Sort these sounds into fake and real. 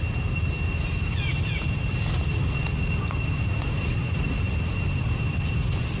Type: real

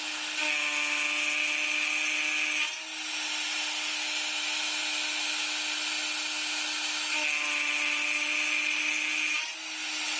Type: real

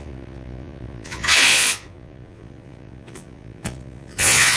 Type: fake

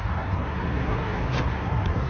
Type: fake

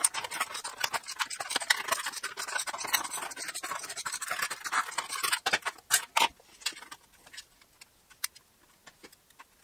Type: real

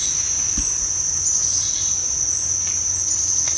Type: real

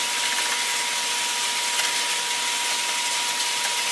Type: real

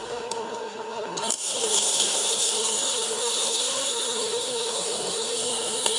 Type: fake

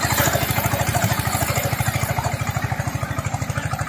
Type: fake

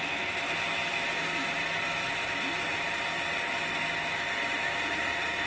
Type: real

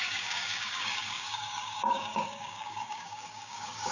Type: fake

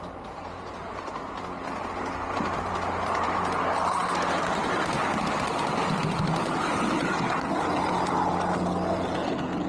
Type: real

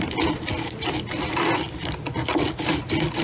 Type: real